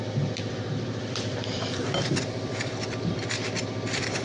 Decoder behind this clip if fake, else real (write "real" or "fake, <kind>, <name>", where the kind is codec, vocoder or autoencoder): fake, vocoder, BigVGAN v2